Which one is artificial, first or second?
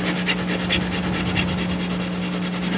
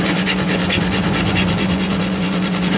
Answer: second